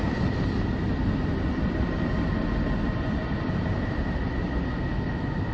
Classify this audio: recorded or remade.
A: recorded